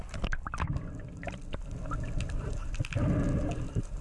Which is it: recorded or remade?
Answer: recorded